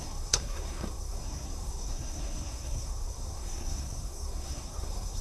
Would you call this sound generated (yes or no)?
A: yes